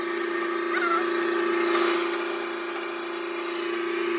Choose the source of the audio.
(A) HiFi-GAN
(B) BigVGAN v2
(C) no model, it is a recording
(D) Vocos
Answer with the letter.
C